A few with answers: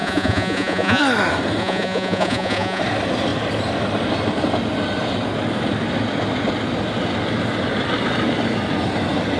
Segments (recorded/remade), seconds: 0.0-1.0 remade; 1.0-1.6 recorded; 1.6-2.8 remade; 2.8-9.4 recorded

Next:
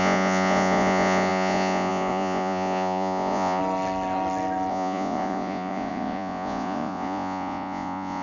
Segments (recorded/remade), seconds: 0.0-3.6 remade; 3.6-4.7 recorded; 4.7-8.2 remade

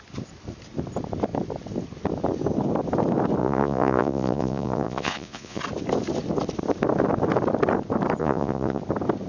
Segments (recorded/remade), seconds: 0.0-3.4 recorded; 3.4-5.6 remade; 5.6-8.2 recorded; 8.2-8.8 remade; 8.8-9.3 recorded

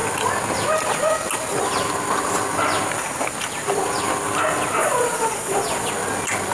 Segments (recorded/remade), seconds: 0.0-4.8 recorded; 4.8-5.9 remade; 5.9-6.5 recorded

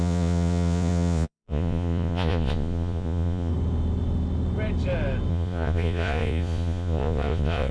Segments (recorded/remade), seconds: 0.0-3.5 remade; 3.5-5.3 recorded; 5.3-7.7 remade